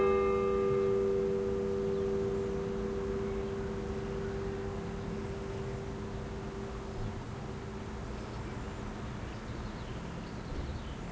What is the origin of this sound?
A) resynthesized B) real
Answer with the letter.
B